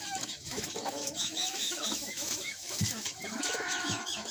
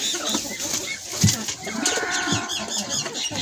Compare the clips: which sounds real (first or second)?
second